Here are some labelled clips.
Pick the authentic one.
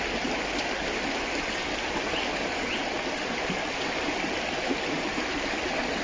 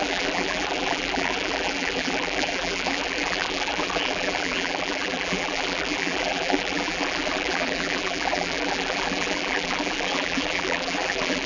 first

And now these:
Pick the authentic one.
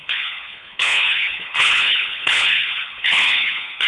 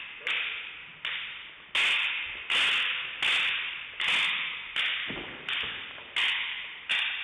second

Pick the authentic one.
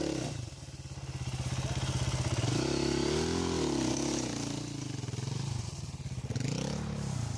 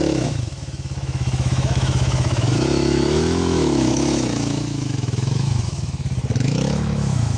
first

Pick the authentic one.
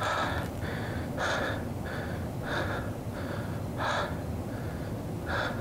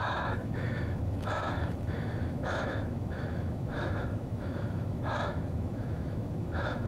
first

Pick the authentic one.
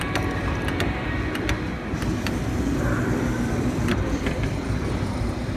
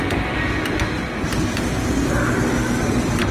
second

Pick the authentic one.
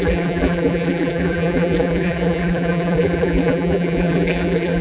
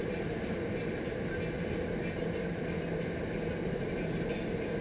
second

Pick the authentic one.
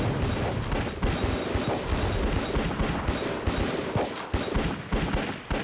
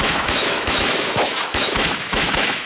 first